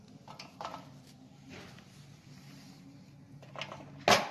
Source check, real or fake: real